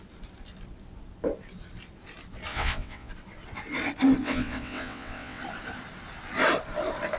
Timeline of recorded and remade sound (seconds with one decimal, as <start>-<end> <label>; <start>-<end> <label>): 0.0-2.5 recorded; 2.5-3.1 remade; 3.1-4.2 recorded; 4.2-5.4 remade; 5.4-7.2 recorded